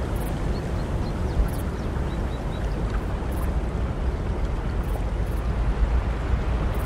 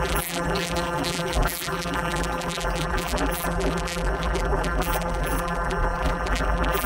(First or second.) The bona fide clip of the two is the first